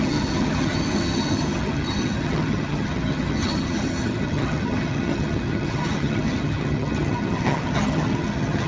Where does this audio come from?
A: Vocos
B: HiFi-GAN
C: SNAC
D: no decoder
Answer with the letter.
B